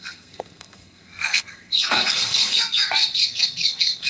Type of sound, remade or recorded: remade